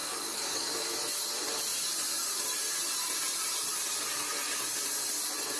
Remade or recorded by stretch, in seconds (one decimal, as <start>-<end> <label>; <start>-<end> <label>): 0.0-0.9 remade; 0.9-5.6 recorded